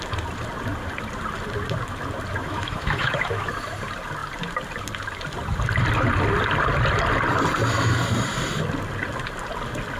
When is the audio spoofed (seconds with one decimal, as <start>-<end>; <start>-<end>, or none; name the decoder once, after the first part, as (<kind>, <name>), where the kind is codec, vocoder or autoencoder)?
2.4-3.5 (autoencoder, DAC-VAE)